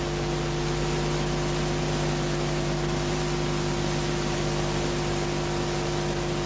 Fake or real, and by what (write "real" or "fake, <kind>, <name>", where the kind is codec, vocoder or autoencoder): real